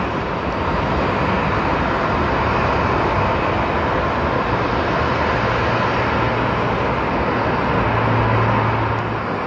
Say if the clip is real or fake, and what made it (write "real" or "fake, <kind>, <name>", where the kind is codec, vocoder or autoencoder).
real